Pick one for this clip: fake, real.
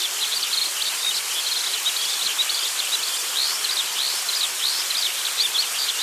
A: real